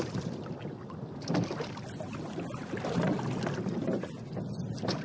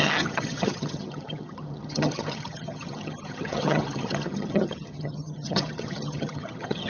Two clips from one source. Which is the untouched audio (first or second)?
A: first